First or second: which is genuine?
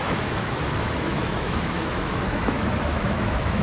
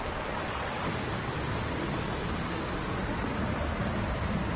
second